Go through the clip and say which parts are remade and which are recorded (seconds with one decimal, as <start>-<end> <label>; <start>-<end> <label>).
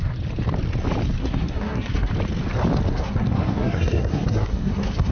0.0-1.2 recorded; 1.2-2.1 remade; 2.1-2.9 recorded; 2.9-5.1 remade